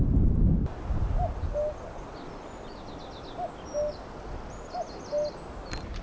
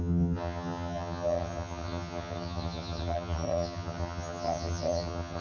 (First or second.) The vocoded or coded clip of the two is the second